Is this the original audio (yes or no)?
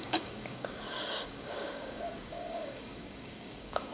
no